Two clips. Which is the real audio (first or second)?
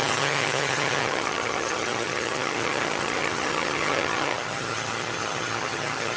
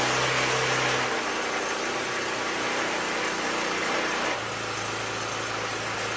second